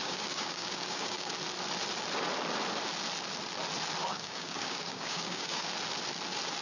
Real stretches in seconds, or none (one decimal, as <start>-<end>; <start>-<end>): 1.3-4.0; 5.7-6.6